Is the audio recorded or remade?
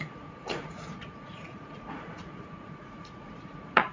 remade